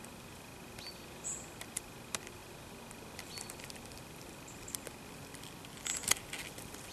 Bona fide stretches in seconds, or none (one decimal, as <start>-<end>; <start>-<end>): 0.0-6.9